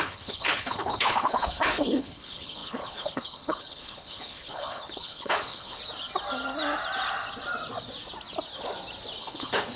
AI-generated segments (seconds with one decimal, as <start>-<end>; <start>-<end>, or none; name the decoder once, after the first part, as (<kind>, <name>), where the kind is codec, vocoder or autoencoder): 0.0-5.8 (codec, HILCodec); 9.2-9.8

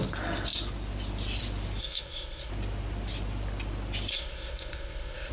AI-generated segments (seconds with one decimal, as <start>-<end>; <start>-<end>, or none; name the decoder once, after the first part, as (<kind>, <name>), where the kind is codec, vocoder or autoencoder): 1.8-2.5 (codec, ZipCodec); 4.1-5.3

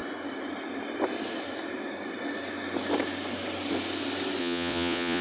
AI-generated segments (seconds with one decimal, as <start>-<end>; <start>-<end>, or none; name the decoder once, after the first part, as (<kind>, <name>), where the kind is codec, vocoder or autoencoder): 4.4-5.2 (vocoder, Vocos)

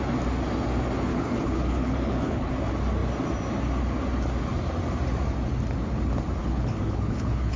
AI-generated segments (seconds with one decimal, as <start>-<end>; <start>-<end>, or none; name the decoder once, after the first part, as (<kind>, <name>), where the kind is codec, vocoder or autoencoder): 1.1-2.5 (codec, HILCodec); 6.4-7.6

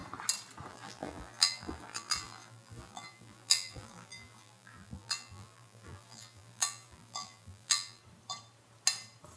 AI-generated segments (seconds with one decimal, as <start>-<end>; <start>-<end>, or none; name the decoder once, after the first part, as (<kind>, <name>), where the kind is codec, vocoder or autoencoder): 0.7-8.0 (vocoder, BigVGAN v2)

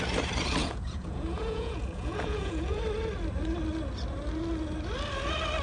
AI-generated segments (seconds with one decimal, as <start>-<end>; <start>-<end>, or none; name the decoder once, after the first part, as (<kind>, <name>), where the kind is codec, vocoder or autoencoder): 0.6-2.8 (vocoder, Vocos)

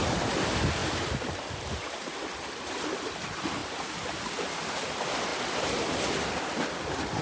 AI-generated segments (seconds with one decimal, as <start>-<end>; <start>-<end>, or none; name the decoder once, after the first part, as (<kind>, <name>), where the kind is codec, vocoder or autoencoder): 0.8-1.4 (vocoder, BigVGAN v2); 3.6-4.3

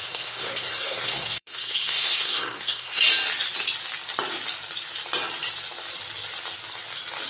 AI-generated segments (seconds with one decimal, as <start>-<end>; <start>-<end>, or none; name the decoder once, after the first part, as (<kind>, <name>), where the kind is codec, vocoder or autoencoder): 0.0-3.0 (codec, SNAC)